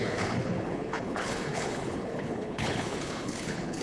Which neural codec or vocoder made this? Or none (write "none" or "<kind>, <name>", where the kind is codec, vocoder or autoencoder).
codec, HILCodec